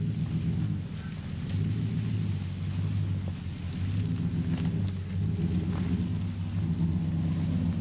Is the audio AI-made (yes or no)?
no